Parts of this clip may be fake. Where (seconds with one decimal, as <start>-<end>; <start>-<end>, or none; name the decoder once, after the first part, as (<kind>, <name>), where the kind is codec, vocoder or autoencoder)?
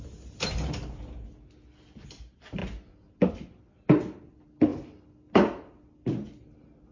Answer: none